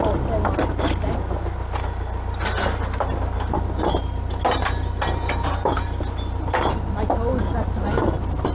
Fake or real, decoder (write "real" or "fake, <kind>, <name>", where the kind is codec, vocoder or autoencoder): real